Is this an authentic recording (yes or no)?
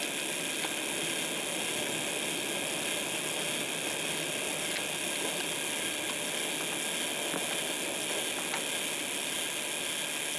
yes